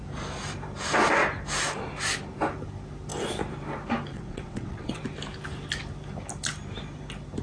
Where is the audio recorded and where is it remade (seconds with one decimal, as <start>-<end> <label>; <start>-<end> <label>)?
0.0-4.1 recorded; 4.1-5.0 remade; 5.0-7.4 recorded